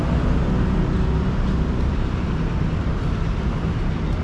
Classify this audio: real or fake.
real